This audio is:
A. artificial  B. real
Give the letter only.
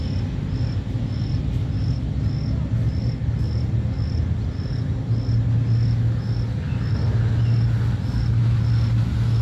B